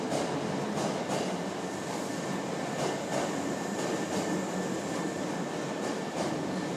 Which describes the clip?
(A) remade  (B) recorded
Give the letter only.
B